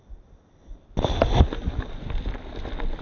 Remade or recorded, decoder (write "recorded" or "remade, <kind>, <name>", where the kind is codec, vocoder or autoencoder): recorded